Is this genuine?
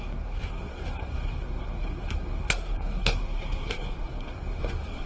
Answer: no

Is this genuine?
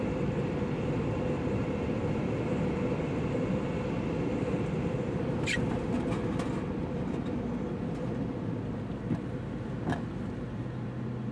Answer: yes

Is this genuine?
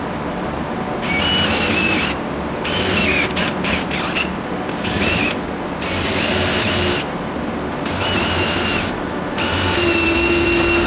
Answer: yes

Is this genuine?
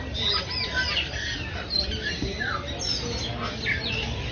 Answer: yes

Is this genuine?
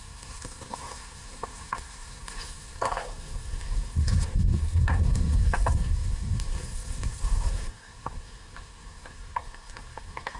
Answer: no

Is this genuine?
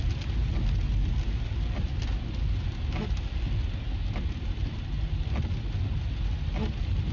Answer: yes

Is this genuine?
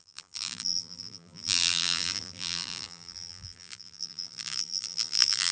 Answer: no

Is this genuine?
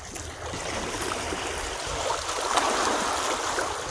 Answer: yes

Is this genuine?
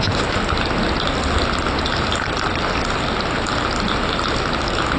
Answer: yes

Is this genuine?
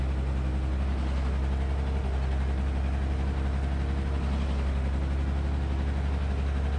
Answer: yes